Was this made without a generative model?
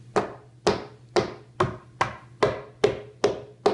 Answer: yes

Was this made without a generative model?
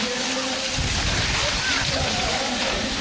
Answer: yes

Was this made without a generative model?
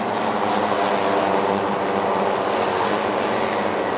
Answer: yes